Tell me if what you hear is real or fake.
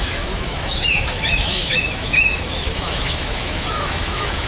fake